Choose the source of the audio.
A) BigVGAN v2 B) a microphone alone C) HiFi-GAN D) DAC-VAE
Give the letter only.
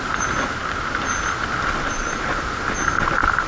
B